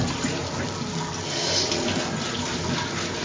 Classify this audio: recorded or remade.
recorded